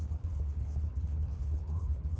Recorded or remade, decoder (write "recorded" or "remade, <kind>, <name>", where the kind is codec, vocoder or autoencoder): remade, codec, HILCodec